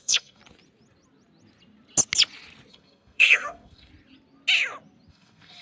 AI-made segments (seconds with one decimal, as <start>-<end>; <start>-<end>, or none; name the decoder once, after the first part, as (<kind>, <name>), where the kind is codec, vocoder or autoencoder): 0.0-0.4 (codec, SNAC); 2.7-3.9; 5.1-5.6